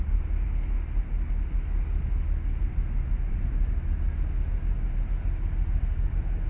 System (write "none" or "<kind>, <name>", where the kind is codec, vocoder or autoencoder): none